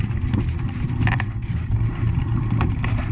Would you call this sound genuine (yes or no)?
yes